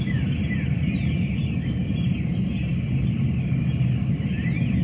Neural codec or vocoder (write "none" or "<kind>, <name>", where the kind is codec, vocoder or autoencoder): none